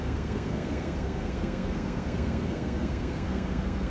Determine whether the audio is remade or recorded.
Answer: remade